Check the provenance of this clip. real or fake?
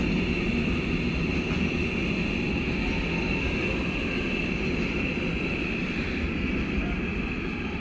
real